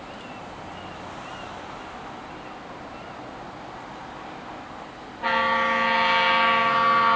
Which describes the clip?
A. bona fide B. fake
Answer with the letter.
A